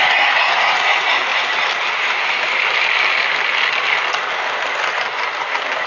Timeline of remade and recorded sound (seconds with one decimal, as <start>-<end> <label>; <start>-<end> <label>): 0.0-1.3 recorded; 1.3-4.1 remade; 4.1-5.9 recorded